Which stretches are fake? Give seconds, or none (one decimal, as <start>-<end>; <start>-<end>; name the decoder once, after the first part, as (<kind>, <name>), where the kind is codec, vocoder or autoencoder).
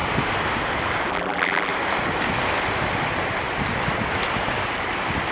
1.1-1.7 (vocoder, BigVGAN v2)